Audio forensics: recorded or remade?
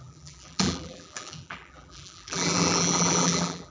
remade